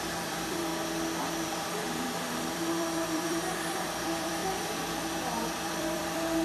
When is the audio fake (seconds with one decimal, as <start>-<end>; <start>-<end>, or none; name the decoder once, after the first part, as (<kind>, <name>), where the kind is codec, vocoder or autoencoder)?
0.0-0.7 (vocoder, BigVGAN v2); 1.2-6.4